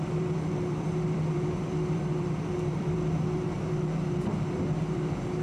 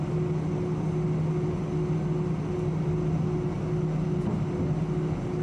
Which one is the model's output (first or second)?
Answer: first